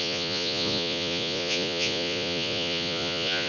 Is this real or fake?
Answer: fake